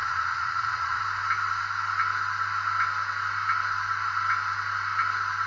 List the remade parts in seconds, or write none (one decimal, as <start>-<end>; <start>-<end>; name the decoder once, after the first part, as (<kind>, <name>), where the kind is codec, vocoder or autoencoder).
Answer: 0.0-1.0 (vocoder, Vocos)